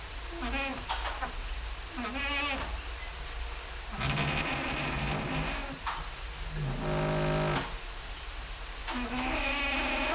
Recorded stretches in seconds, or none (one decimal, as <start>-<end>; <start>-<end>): 0.0-8.8; 9.5-10.1